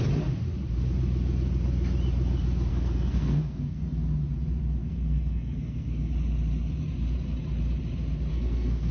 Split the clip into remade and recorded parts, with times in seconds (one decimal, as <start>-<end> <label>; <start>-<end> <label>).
0.0-2.7 recorded; 2.7-3.8 remade; 3.8-4.8 recorded; 4.8-6.1 remade; 6.1-8.3 recorded; 8.3-8.9 remade